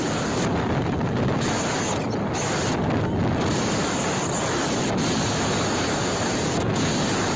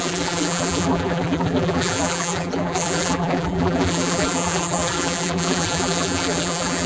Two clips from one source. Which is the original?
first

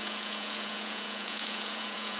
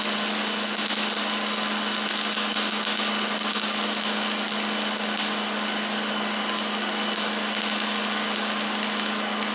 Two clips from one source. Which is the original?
second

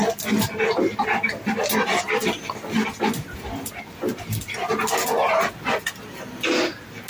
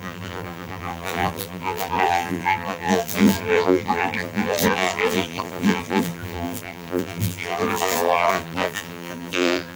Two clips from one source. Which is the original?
first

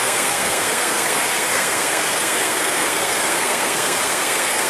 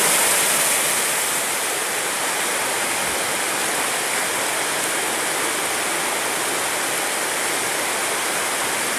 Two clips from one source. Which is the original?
second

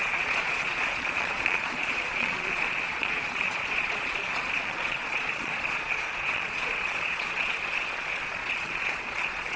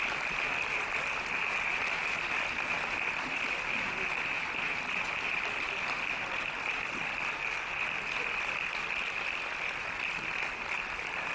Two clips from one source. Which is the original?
second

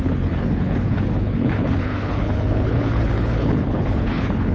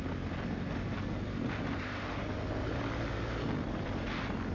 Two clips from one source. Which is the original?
second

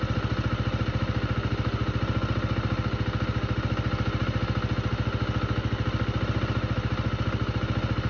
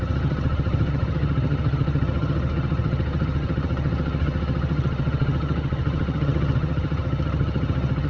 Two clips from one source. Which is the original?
first